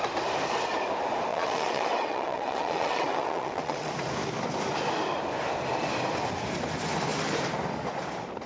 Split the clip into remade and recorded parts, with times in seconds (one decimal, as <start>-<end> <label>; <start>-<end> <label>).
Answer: 0.0-1.3 recorded; 1.3-3.9 remade; 3.9-8.5 recorded